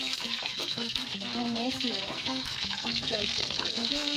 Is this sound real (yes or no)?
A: no